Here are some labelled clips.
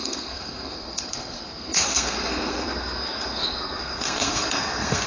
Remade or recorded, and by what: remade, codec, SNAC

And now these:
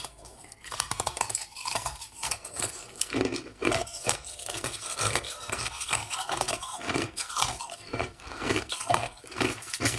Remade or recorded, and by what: remade, codec, SNAC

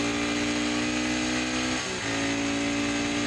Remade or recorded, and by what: recorded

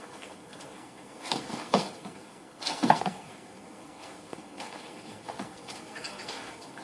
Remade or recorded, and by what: remade, codec, SNAC